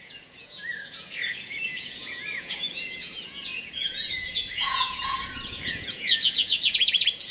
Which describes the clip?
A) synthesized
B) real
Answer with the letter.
A